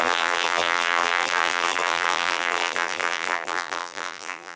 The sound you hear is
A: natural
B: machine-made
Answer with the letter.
B